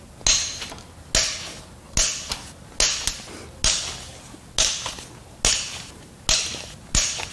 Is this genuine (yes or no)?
yes